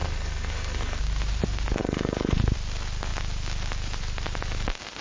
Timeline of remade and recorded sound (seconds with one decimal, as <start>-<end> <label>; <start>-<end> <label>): 0.0-1.0 remade; 1.0-1.8 recorded; 1.8-2.4 remade; 2.4-5.0 recorded